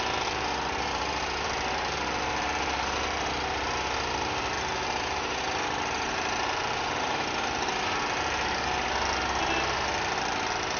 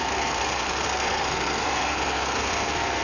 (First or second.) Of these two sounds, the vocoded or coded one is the second